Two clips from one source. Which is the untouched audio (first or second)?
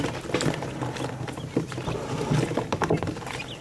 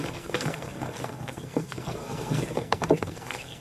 first